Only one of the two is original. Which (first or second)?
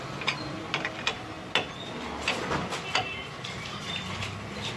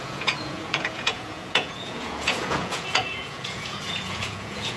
first